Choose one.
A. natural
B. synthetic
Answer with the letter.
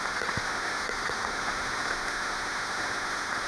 B